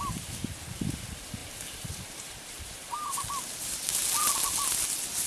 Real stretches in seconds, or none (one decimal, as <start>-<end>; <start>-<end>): 0.0-1.4; 3.1-5.3